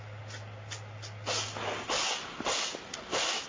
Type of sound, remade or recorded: recorded